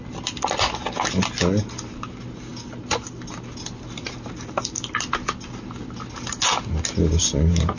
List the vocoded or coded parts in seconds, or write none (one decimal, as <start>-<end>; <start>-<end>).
none